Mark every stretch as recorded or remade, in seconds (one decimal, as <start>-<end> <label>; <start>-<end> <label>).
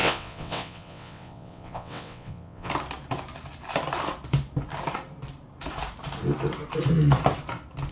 0.0-2.7 remade; 2.7-7.9 recorded